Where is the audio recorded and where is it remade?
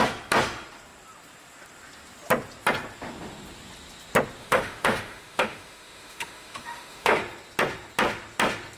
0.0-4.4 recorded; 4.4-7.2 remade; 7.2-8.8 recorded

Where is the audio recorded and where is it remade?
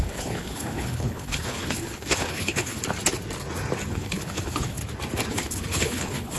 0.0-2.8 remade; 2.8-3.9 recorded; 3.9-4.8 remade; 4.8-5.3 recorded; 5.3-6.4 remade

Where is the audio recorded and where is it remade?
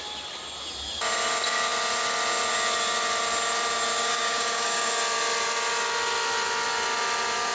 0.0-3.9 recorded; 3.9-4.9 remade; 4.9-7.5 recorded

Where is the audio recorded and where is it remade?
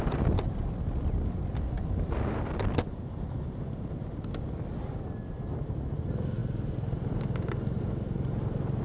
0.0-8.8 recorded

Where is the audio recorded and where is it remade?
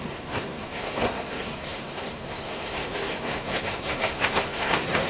0.0-5.1 remade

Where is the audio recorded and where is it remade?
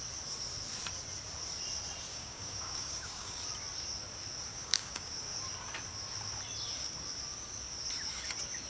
0.0-2.1 recorded; 2.1-3.4 remade; 3.4-4.5 recorded; 4.5-5.1 remade; 5.1-8.7 recorded